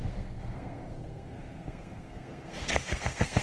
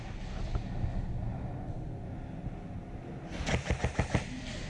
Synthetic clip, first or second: first